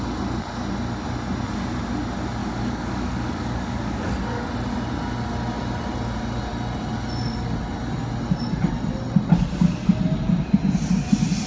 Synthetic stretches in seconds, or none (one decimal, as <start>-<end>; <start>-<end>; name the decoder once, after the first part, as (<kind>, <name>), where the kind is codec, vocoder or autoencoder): 2.4-4.1 (codec, DAC)